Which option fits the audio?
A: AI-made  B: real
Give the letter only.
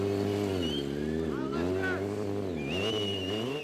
B